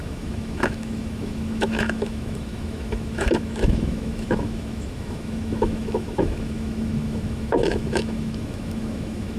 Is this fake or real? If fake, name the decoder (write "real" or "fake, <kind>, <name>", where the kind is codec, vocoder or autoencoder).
fake, autoencoder, DAC-VAE